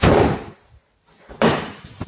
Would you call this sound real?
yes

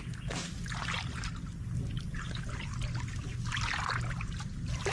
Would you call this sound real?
yes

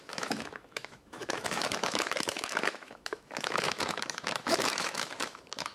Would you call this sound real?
no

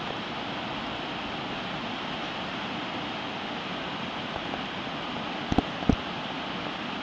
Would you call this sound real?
yes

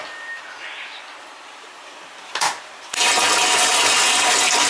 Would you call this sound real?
yes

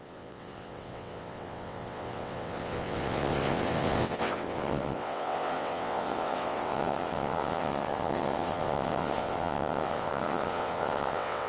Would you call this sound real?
no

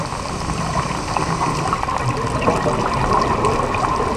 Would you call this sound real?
yes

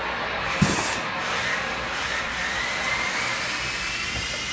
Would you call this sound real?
yes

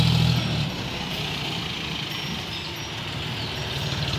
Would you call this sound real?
yes